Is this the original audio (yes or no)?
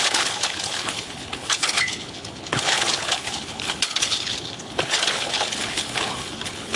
no